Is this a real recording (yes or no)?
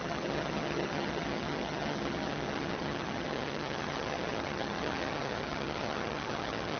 no